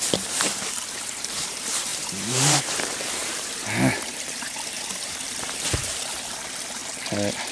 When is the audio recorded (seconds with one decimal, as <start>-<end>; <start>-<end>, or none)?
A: 6.8-7.5